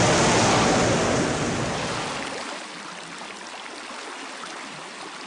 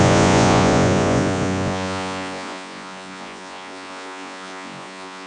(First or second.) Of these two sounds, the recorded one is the first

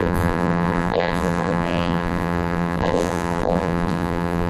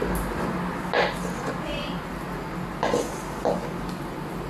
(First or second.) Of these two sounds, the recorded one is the second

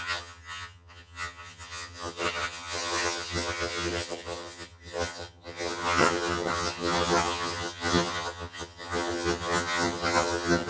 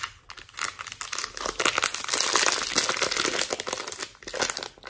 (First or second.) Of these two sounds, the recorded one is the second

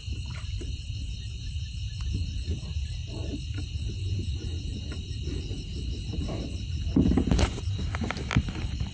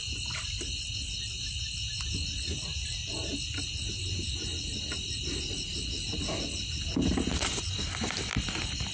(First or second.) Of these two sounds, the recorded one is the second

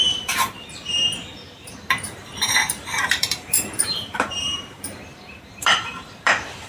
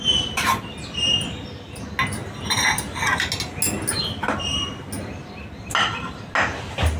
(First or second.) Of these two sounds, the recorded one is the second